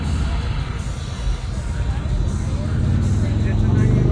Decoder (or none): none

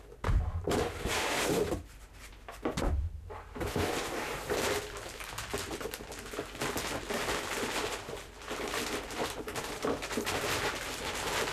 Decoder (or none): none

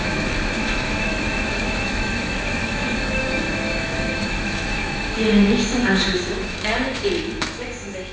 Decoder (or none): autoencoder, DAC-VAE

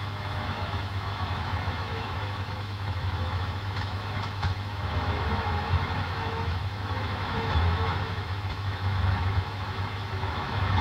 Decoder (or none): autoencoder, DAC-VAE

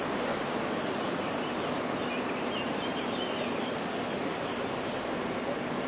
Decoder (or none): none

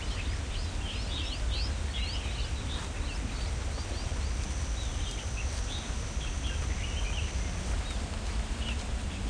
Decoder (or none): none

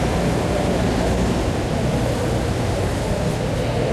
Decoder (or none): none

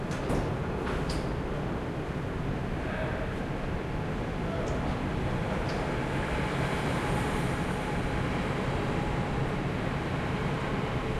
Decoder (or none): none